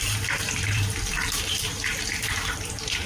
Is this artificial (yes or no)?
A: yes